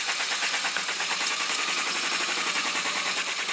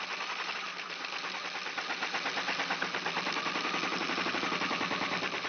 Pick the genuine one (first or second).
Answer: second